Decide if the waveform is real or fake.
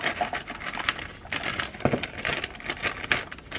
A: real